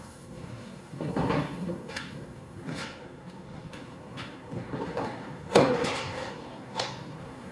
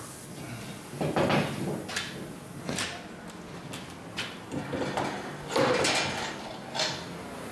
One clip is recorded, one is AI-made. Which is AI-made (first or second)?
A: first